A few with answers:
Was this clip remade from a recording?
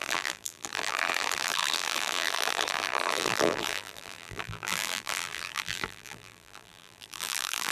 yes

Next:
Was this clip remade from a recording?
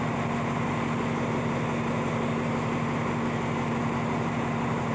no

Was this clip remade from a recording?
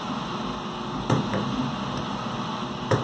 yes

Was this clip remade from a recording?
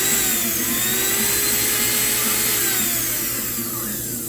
no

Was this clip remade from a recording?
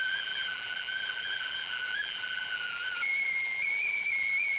yes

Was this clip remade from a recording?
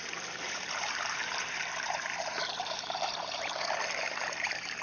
yes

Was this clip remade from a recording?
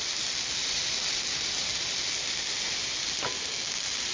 no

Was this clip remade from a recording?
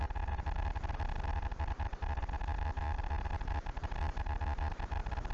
yes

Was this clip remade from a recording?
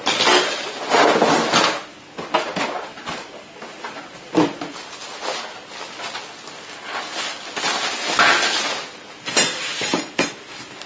no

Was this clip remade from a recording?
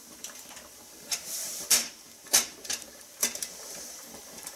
yes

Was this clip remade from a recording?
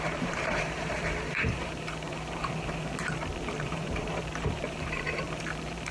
yes